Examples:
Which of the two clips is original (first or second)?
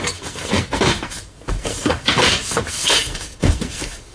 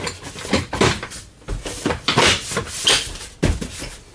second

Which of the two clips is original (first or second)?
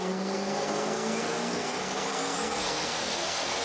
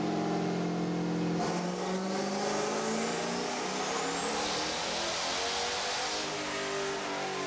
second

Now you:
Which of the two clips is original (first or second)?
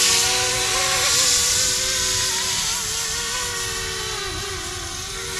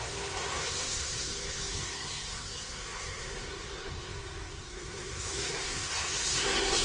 first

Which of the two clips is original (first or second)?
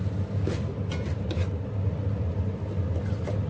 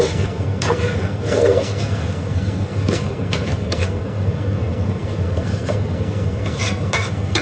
first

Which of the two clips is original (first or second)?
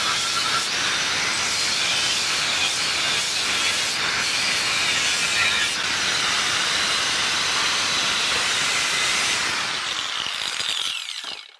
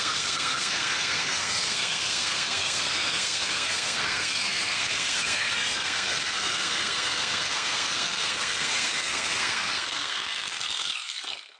first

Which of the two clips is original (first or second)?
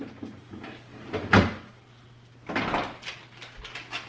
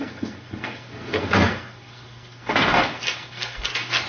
first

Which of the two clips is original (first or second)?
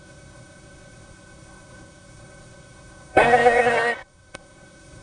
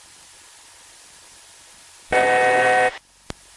second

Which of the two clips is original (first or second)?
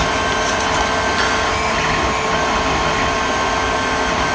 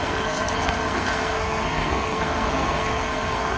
first